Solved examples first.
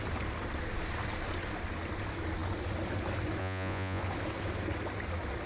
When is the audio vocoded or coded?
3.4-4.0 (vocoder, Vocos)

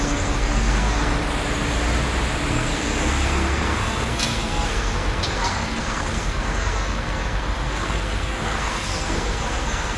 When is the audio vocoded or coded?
0.0-1.1 (codec, SNAC); 2.5-10.0